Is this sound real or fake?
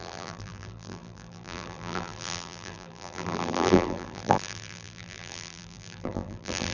fake